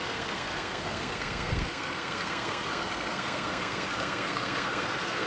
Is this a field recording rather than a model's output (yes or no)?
no